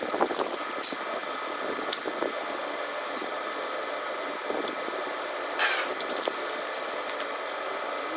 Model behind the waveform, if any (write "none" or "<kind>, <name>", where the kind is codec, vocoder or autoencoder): none